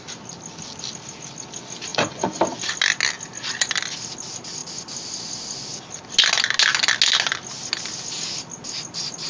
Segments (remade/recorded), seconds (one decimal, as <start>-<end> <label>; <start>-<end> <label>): 0.0-1.9 recorded; 1.9-2.4 remade; 2.4-9.3 recorded